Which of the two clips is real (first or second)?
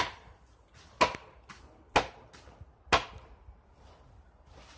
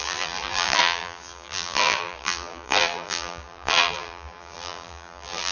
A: first